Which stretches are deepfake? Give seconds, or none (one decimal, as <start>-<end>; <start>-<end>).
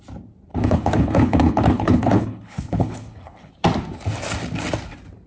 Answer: 0.5-3.5